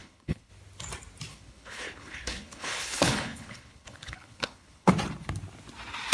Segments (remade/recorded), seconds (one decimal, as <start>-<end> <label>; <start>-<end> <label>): 0.0-0.5 remade; 0.5-1.3 recorded; 1.3-4.9 remade; 4.9-6.1 recorded